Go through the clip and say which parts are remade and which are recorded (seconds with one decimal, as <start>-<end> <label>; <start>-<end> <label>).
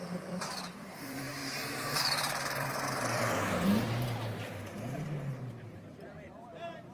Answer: 0.0-6.9 remade